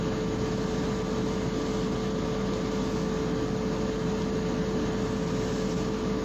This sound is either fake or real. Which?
real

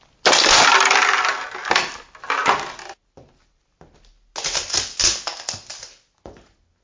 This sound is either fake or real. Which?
real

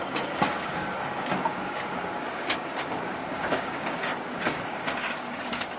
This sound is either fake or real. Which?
fake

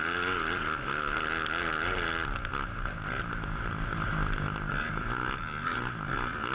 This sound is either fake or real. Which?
real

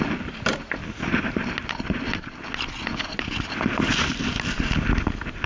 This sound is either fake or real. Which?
real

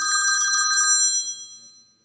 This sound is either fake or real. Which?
real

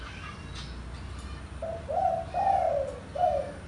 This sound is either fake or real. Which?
real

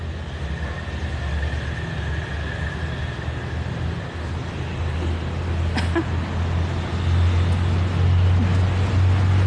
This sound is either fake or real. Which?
real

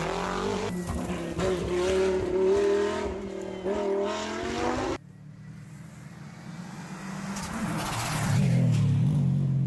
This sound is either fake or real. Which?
real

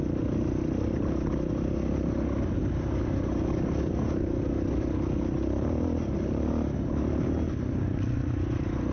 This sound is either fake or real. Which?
real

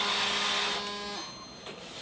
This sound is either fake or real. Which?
real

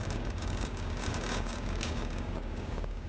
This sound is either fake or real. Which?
fake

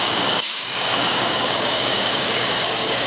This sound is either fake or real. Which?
fake